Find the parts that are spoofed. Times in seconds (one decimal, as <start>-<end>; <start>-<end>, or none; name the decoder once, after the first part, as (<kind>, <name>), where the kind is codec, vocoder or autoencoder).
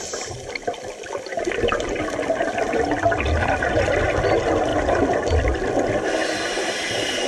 4.7-5.3 (vocoder, BigVGAN v2)